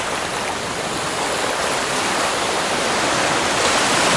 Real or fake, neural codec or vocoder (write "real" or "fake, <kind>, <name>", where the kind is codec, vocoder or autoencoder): real